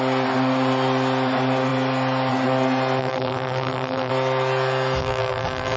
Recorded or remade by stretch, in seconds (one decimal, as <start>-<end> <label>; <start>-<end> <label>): 0.0-3.0 recorded; 3.0-4.1 remade; 4.1-5.0 recorded; 5.0-5.8 remade